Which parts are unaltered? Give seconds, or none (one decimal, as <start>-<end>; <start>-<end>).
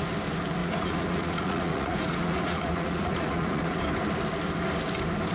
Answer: 0.0-0.6; 3.8-5.3